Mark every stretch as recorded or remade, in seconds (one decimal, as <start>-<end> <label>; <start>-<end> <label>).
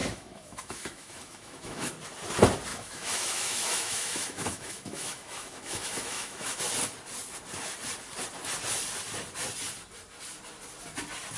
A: 0.0-1.9 remade; 1.9-2.7 recorded; 2.7-6.6 remade; 6.6-11.4 recorded